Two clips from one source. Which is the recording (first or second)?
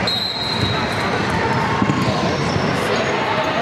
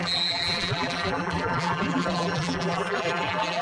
first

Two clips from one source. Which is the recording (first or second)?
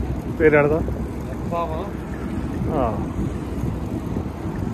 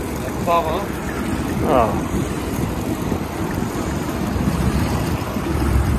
first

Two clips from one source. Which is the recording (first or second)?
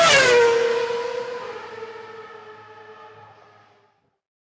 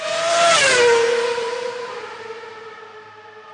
first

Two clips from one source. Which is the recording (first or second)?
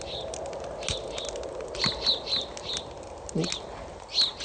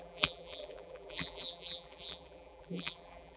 first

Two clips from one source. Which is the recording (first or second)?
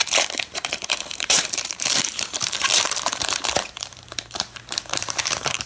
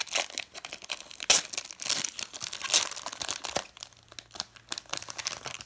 second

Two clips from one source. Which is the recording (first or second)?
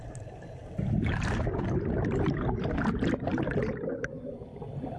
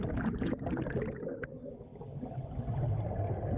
second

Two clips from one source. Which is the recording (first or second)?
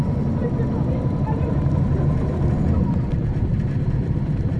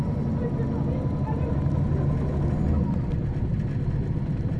second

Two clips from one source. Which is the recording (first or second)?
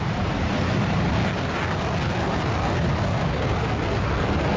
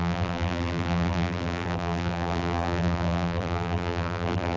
first